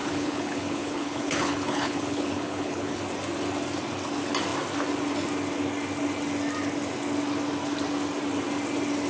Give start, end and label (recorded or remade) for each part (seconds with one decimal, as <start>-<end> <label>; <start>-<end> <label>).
0.0-3.0 remade; 3.0-9.1 recorded